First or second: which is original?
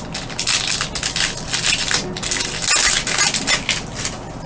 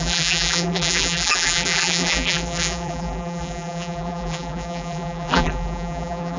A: first